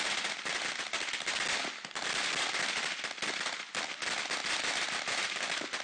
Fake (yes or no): no